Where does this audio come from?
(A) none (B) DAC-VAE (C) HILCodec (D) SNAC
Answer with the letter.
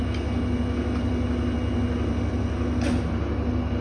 A